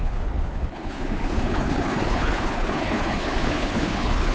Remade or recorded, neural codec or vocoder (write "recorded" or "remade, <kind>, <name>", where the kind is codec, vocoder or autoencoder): remade, codec, HILCodec